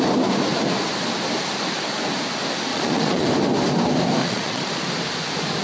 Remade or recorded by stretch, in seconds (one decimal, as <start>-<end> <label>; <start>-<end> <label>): 0.0-2.7 recorded; 2.7-3.3 remade; 3.3-4.2 recorded; 4.2-4.7 remade; 4.7-5.6 recorded